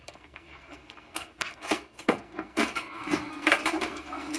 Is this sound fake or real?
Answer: fake